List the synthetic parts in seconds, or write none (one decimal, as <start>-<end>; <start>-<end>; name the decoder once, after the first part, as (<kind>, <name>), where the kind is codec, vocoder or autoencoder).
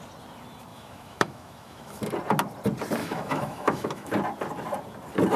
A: 0.7-2.0 (autoencoder, DAC-VAE); 3.0-4.1